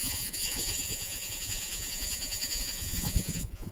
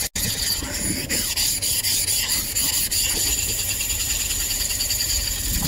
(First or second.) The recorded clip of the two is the second